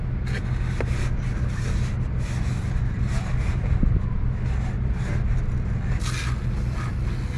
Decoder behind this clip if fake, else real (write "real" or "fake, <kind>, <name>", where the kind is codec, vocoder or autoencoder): real